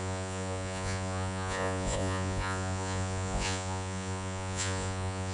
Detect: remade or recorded remade